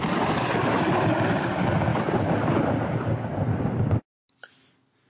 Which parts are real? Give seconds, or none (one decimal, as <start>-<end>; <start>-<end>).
0.0-5.1